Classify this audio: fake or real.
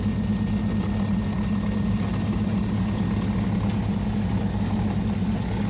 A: real